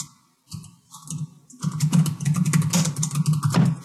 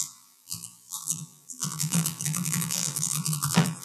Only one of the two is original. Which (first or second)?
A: first